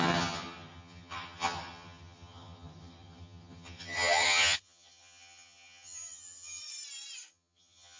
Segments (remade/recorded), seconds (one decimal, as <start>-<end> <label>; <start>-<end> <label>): 0.0-6.6 remade; 6.6-7.3 recorded; 7.3-8.0 remade